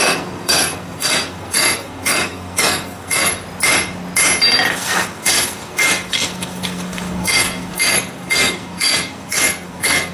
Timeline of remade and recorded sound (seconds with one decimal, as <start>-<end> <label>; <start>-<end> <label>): 0.0-3.3 remade; 3.3-4.7 recorded; 4.7-10.1 remade